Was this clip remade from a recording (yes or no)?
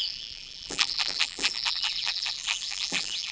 yes